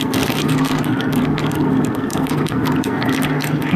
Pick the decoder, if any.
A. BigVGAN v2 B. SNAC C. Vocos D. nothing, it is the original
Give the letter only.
B